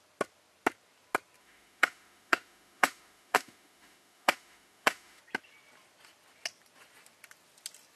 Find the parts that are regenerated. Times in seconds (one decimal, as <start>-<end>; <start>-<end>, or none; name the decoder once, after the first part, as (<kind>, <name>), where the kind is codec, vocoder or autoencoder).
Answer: 1.4-5.2 (autoencoder, DAC-VAE)